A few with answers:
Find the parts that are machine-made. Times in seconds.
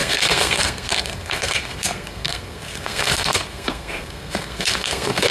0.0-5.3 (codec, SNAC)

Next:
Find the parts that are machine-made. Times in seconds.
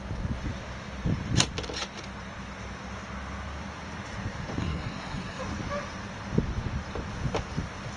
4.6-5.4 (codec, SNAC)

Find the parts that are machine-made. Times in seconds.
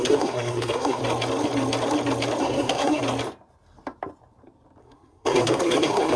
0.0-1.0 (codec, SNAC); 2.4-3.0; 4.8-6.2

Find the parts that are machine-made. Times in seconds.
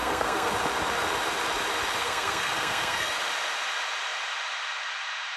0.0-0.5 (codec, SNAC); 2.0-3.2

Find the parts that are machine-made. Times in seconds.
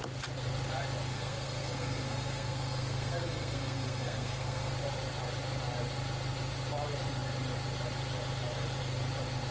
1.1-4.7 (codec, SNAC)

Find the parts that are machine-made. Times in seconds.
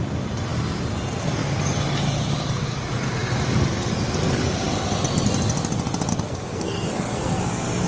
6.1-7.4 (codec, SNAC)